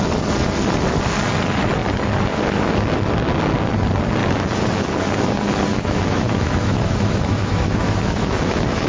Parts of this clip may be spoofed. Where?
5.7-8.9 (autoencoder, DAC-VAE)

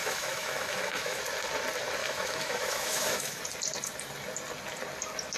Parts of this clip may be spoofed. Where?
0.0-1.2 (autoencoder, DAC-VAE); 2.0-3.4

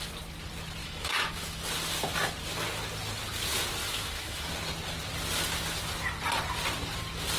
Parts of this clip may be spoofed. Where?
0.8-1.6 (autoencoder, DAC-VAE); 3.8-4.5

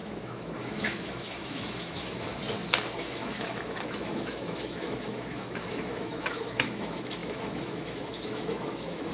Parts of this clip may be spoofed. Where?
0.0-2.3 (autoencoder, DAC-VAE); 3.0-9.1

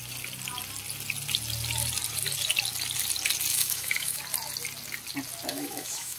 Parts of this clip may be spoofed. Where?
3.5-4.2 (autoencoder, DAC-VAE); 5.5-6.2

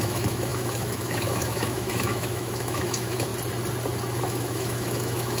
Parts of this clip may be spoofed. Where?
0.0-3.3 (autoencoder, DAC-VAE); 4.2-5.4

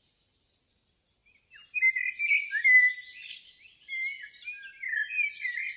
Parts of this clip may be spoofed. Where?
none